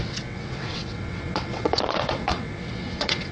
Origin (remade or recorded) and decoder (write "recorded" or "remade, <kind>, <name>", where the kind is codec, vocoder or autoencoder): remade, vocoder, WaveNeXt